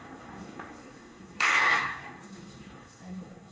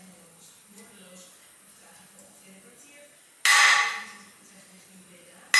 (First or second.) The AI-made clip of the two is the first